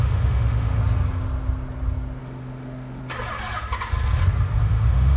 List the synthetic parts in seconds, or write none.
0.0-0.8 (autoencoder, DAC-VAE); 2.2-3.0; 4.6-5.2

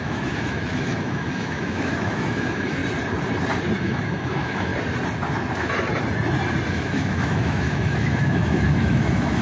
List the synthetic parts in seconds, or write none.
0.0-2.8 (autoencoder, DAC-VAE); 3.8-4.7; 6.7-9.4